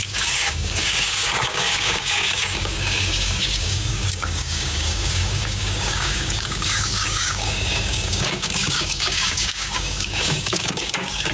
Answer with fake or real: fake